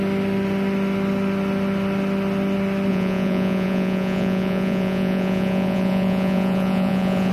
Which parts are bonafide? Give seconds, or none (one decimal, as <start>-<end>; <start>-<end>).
0.0-2.9